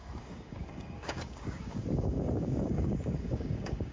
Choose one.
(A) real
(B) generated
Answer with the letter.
B